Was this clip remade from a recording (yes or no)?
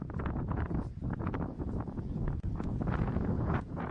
yes